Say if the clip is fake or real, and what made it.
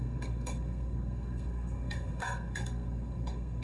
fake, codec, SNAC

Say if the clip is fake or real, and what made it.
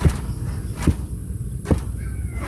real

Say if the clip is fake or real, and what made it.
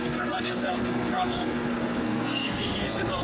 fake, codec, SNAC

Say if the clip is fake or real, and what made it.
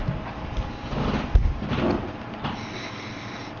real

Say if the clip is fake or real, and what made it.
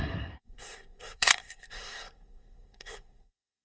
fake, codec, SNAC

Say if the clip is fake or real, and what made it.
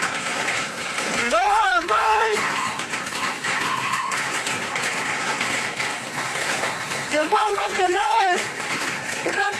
fake, codec, SNAC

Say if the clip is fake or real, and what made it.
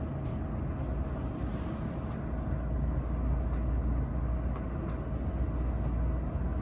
real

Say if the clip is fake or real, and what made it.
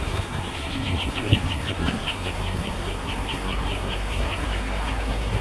fake, codec, SNAC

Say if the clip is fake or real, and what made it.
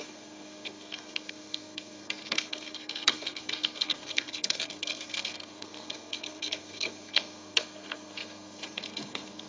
fake, codec, SNAC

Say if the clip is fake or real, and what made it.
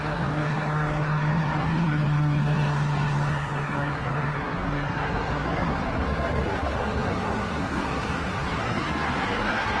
fake, codec, SNAC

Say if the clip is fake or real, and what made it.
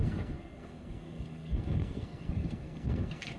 fake, codec, SNAC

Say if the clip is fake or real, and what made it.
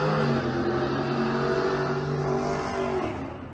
real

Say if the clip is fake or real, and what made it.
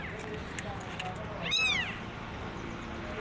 real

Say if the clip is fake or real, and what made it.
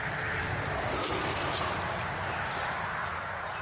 real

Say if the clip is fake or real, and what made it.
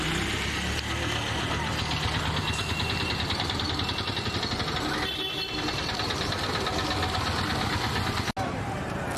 real